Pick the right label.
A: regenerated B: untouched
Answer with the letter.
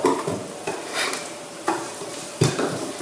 B